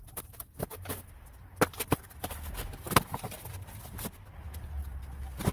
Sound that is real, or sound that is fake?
real